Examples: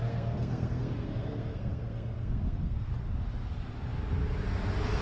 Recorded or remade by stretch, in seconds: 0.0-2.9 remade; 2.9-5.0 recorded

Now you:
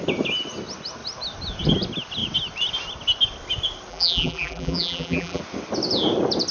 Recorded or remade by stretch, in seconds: 0.0-3.9 recorded; 3.9-5.4 remade; 5.4-6.5 recorded

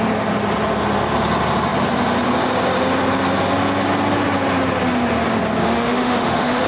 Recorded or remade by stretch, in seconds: 0.0-5.6 recorded; 5.6-6.7 remade

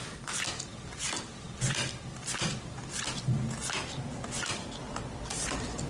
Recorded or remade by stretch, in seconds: 0.0-5.9 recorded

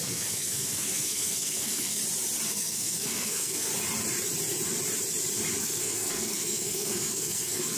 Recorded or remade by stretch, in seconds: 0.0-2.0 remade; 2.0-2.5 recorded; 2.5-3.7 remade; 3.7-5.6 recorded; 5.6-7.8 remade

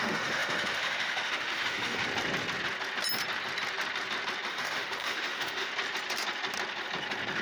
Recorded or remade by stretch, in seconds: 0.0-2.0 remade; 2.0-4.5 recorded; 4.5-5.7 remade; 5.7-7.4 recorded

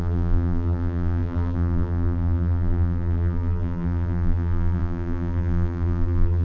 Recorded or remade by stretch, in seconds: 0.0-6.4 remade

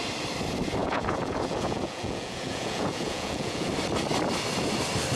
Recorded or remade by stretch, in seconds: 0.0-0.8 recorded; 0.8-3.7 remade; 3.7-5.2 recorded